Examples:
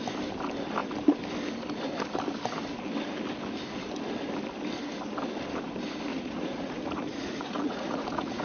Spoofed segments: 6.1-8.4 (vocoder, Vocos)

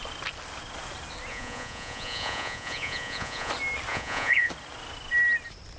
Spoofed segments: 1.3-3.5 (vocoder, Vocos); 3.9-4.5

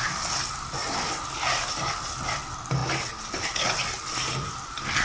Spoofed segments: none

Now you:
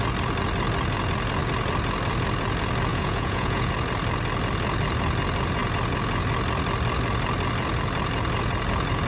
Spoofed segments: 2.9-3.7 (vocoder, Vocos)

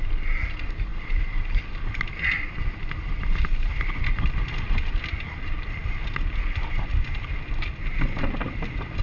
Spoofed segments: none

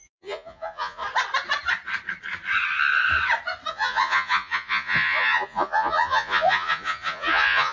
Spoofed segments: 0.0-1.0 (vocoder, Vocos); 3.7-7.7

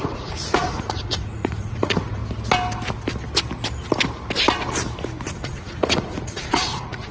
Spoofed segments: 0.0-2.2 (vocoder, Vocos); 5.3-7.1